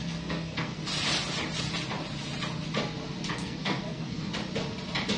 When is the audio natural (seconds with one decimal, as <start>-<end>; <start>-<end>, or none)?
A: 0.8-3.3; 4.3-5.2